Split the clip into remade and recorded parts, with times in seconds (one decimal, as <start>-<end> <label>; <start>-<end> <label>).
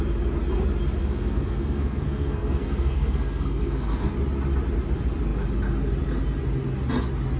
0.0-1.0 recorded; 1.0-4.1 remade; 4.1-7.4 recorded